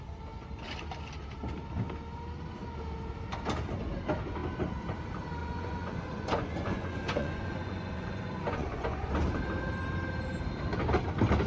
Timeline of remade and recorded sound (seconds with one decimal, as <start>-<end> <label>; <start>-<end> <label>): 0.0-5.4 recorded; 5.4-9.1 remade; 9.1-11.5 recorded

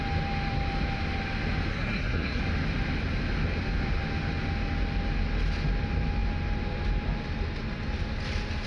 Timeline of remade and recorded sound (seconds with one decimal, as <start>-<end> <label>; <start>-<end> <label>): 0.0-1.7 recorded; 1.7-2.4 remade; 2.4-8.7 recorded

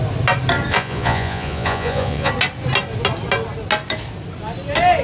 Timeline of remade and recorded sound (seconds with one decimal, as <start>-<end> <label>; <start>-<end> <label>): 0.0-0.7 recorded; 0.7-2.3 remade; 2.3-5.0 recorded

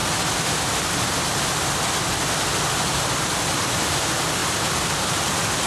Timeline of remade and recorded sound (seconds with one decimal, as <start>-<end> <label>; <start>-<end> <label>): 0.0-3.4 recorded; 3.4-5.7 remade

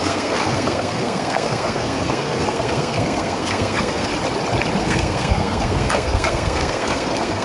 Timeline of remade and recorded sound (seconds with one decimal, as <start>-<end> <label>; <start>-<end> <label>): 0.0-4.1 remade; 4.1-4.8 recorded; 4.8-7.4 remade

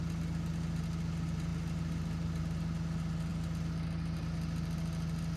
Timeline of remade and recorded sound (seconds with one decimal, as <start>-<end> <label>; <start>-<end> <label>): 0.0-5.4 recorded